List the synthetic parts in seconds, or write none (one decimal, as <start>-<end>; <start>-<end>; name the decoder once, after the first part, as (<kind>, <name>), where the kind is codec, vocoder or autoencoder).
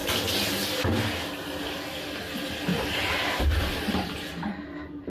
2.7-4.1 (vocoder, BigVGAN v2)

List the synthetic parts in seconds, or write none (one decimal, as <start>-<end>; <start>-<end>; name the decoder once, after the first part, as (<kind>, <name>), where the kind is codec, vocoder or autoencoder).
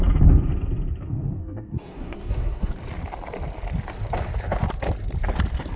1.4-2.7 (codec, SNAC)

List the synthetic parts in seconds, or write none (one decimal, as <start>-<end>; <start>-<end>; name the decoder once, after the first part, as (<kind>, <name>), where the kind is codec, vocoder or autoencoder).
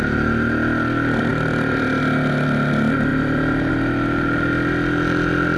1.3-2.0 (vocoder, BigVGAN v2); 3.1-3.7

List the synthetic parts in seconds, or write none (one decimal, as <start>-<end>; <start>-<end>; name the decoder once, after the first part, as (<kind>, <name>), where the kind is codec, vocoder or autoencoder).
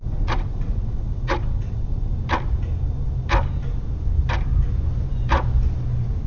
0.0-2.1 (vocoder, WaveNeXt)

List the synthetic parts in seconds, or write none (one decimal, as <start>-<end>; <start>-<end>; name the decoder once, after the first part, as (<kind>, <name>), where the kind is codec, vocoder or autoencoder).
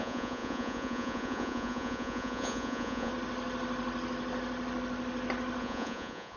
0.0-3.1 (vocoder, Vocos); 5.6-6.4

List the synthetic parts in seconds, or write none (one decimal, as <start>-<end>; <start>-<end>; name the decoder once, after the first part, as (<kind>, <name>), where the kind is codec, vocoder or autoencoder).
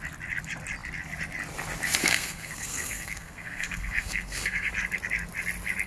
2.0-4.7 (codec, SNAC)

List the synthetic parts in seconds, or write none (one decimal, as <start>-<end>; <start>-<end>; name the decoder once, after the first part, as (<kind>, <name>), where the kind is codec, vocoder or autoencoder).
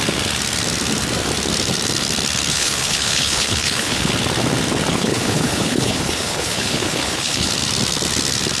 2.5-4.1 (codec, HILCodec); 4.9-7.5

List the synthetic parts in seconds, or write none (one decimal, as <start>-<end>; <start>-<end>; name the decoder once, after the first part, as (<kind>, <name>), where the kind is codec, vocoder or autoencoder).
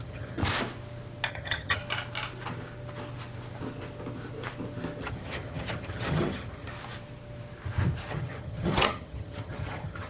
0.0-0.4 (vocoder, HiFi-GAN); 1.3-1.8; 5.0-6.7; 8.1-10.1